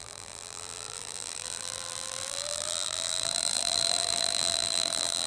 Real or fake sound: fake